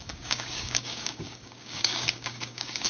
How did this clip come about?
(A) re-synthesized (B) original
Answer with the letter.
A